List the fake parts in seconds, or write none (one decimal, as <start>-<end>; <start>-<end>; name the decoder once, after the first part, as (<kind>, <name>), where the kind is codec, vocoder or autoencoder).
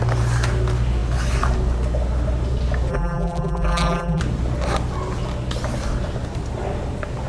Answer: 2.9-4.2 (vocoder, BigVGAN v2)